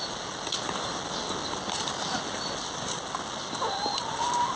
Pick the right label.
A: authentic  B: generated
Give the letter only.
A